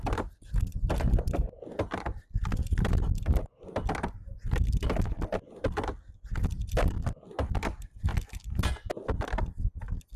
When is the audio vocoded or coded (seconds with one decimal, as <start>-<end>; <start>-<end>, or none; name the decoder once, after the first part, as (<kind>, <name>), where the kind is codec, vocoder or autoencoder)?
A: none